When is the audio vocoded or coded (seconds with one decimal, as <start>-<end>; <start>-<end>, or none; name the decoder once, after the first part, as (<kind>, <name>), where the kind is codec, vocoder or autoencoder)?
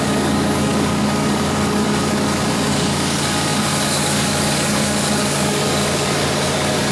0.0-6.9 (codec, DAC)